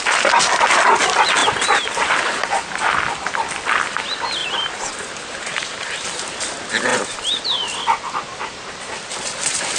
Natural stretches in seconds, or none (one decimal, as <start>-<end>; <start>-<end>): 0.0-1.4; 2.2-4.4; 6.0-6.9; 7.4-9.8